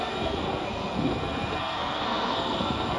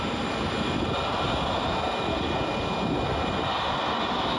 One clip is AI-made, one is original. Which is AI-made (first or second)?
first